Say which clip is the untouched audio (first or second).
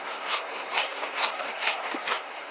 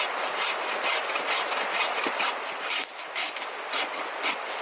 second